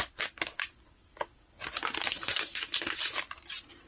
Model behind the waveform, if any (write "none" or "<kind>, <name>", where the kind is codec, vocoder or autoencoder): none